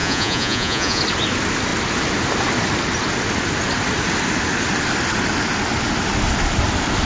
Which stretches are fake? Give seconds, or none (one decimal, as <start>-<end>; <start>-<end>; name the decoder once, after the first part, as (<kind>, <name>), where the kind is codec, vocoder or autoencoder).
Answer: 0.0-1.0 (vocoder, Vocos)